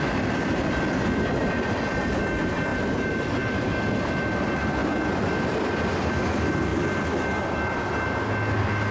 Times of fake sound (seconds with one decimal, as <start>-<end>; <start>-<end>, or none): 2.7-3.7